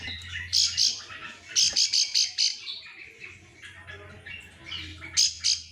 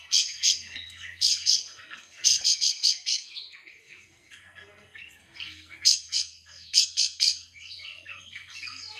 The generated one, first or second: second